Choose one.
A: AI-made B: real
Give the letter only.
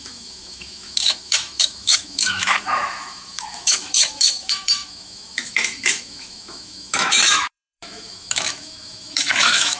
A